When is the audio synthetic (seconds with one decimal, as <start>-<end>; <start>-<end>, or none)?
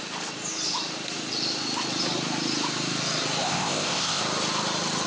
3.4-4.2